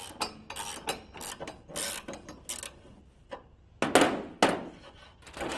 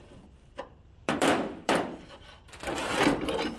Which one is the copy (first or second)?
second